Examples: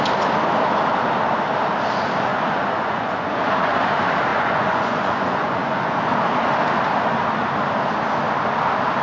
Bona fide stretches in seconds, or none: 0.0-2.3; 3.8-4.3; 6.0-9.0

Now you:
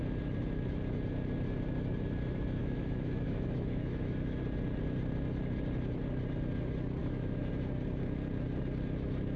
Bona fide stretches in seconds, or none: 0.0-2.6; 4.4-7.0; 7.5-9.4